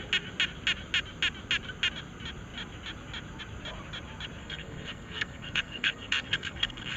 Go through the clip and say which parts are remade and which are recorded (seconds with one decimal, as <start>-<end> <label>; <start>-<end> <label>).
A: 0.0-4.4 recorded; 4.4-7.0 remade